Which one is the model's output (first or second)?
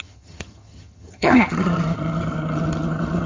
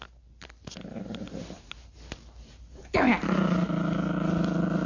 first